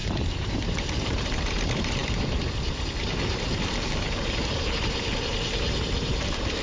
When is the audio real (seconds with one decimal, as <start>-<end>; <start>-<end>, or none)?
none